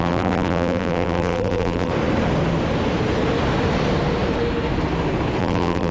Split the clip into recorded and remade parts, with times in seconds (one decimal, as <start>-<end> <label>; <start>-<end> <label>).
0.0-1.9 remade; 1.9-5.4 recorded; 5.4-5.9 remade